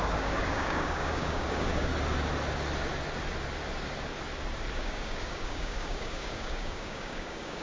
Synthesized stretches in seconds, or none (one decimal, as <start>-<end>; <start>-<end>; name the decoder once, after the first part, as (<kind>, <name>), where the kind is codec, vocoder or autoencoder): 0.0-1.9 (codec, DAC); 4.7-7.6